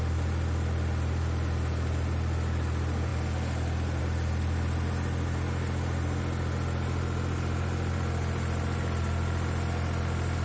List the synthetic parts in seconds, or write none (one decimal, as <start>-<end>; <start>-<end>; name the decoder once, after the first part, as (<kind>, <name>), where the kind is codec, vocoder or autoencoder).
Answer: none